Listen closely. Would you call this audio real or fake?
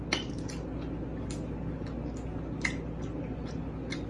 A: real